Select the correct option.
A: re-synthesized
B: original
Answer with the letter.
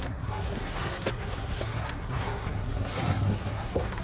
A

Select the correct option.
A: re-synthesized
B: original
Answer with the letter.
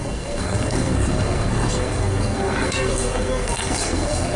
A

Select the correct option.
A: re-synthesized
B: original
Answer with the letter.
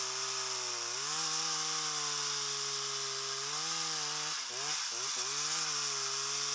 B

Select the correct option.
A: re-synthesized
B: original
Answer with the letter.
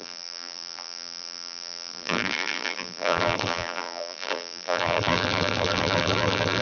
A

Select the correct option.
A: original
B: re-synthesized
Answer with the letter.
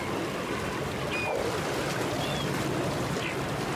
A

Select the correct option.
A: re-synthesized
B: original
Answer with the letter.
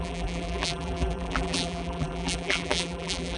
A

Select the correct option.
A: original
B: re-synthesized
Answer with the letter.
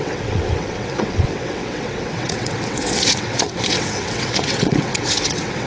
B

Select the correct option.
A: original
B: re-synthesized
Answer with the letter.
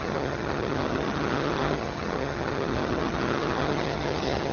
B